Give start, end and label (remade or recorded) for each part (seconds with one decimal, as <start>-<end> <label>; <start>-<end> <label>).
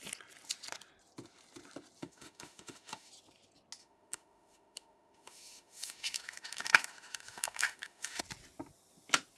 0.0-2.0 recorded; 2.0-3.1 remade; 3.1-3.8 recorded; 3.8-8.2 remade; 8.2-9.4 recorded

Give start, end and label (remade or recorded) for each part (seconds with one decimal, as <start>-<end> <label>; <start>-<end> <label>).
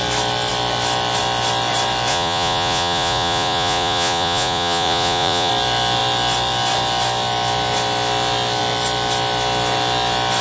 0.0-2.1 recorded; 2.1-5.5 remade; 5.5-10.4 recorded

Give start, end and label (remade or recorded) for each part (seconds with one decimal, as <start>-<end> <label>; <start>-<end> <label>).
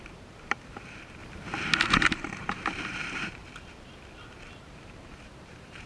0.0-1.2 remade; 1.2-1.8 recorded; 1.8-3.4 remade; 3.4-4.6 recorded; 4.6-5.9 remade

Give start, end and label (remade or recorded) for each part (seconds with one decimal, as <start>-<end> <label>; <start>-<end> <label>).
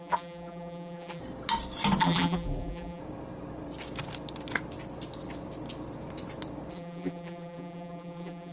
0.0-1.2 remade; 1.2-2.0 recorded; 2.0-3.0 remade; 3.0-6.7 recorded; 6.7-8.5 remade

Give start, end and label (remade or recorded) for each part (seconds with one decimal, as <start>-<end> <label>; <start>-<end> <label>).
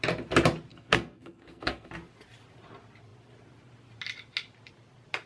0.0-0.7 recorded; 0.7-1.9 remade; 1.9-5.3 recorded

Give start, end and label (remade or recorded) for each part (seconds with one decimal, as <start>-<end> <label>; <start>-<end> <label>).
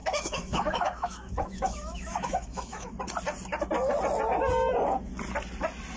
0.0-2.9 remade; 2.9-6.0 recorded